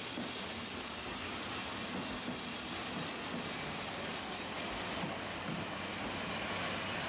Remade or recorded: recorded